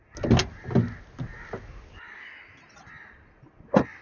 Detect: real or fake real